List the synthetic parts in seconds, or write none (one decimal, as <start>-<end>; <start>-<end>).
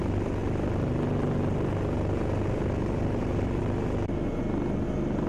none